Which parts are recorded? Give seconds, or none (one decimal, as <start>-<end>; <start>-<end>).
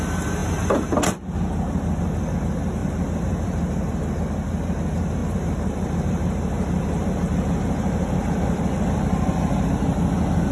0.0-2.8; 4.2-5.2; 9.7-10.5